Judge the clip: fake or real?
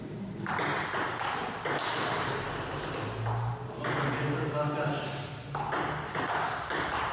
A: real